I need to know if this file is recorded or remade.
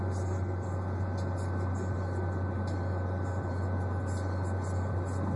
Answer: recorded